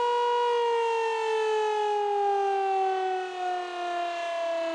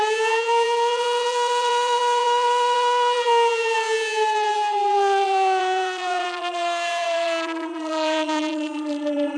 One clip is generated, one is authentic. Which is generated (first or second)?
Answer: second